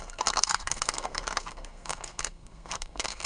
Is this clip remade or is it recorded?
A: remade